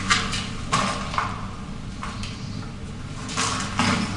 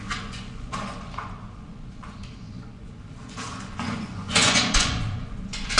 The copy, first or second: second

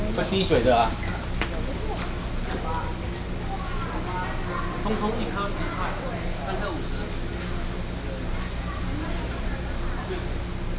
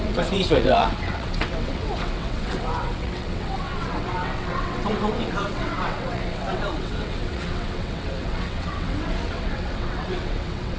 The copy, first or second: second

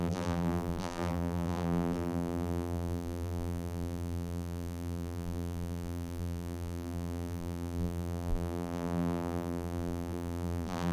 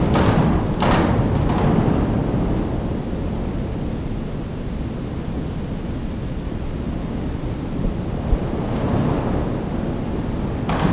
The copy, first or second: first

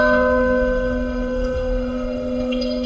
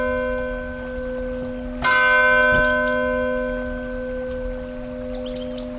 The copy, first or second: first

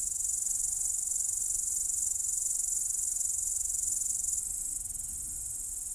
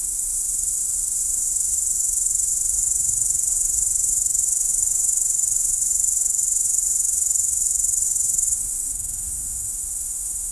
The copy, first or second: second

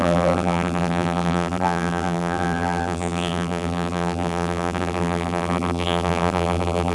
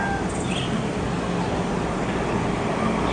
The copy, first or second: first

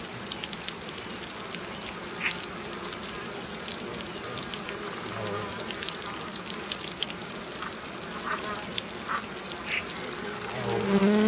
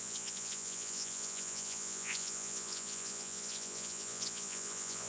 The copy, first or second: second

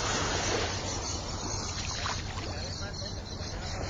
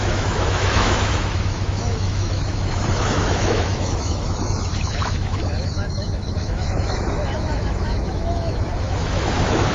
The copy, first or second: second